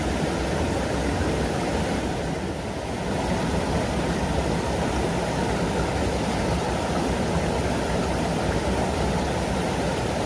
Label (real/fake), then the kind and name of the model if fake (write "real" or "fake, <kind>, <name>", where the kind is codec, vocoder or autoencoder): real